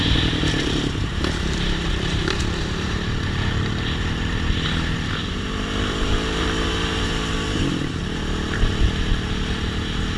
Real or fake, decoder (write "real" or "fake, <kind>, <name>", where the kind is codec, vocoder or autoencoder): fake, vocoder, BigVGAN v2